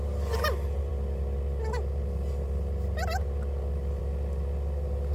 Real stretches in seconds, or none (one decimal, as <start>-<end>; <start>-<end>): 0.0-5.1